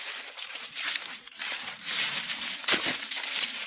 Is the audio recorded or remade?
remade